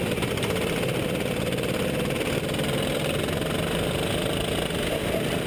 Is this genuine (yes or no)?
yes